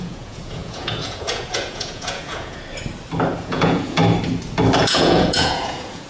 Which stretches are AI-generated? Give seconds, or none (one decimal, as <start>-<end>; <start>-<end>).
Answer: 0.0-2.6; 3.4-4.0; 4.8-6.1